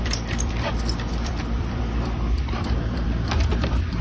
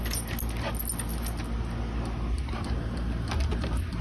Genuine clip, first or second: second